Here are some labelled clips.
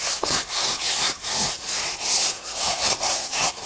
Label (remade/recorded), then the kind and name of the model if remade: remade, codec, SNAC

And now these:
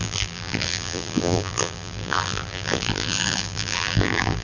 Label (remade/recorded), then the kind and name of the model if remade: remade, vocoder, BigVGAN v2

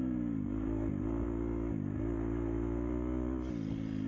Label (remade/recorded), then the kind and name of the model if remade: recorded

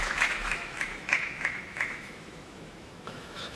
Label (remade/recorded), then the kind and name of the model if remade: remade, autoencoder, DAC-VAE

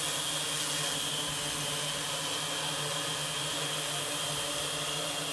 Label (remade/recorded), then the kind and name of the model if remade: recorded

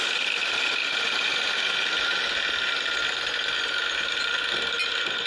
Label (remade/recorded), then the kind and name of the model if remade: recorded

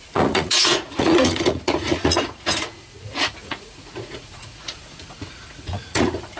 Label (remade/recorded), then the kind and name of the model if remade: remade, vocoder, Vocos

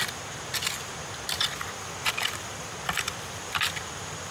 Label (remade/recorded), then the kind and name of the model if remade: recorded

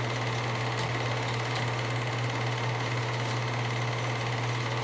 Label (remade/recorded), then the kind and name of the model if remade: recorded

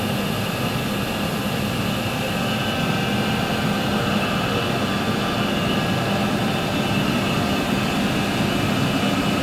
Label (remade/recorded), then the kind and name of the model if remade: recorded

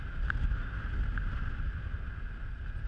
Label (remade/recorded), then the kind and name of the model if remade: recorded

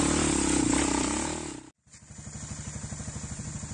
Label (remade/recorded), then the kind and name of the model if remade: recorded